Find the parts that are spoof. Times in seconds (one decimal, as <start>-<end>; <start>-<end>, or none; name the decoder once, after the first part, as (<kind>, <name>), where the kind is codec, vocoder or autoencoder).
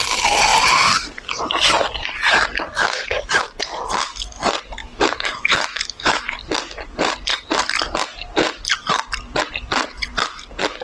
4.8-6.4 (autoencoder, DAC-VAE)